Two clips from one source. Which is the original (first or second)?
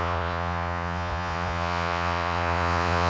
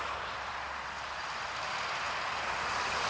second